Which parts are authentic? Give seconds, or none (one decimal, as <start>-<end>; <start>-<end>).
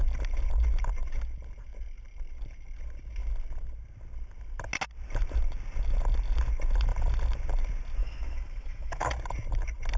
0.0-8.0; 9.1-10.0